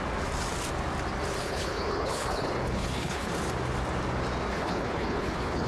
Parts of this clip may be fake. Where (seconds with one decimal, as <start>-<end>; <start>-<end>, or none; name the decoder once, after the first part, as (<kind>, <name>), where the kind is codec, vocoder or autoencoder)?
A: 1.4-3.3 (codec, HILCodec); 4.5-5.7